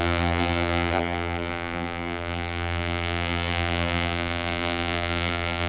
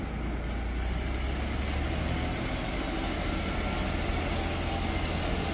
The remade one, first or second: first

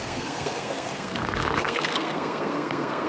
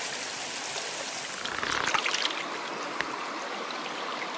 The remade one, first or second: first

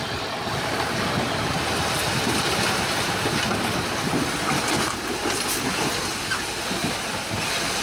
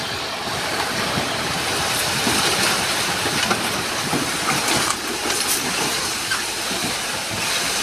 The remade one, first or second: second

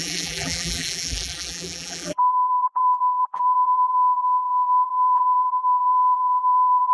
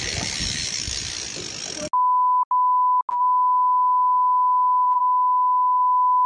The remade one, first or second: first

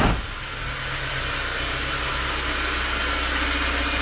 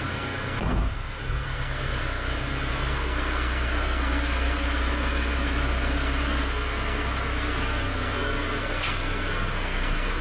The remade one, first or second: second